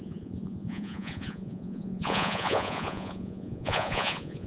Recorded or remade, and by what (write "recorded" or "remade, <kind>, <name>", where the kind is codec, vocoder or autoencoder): remade, vocoder, Vocos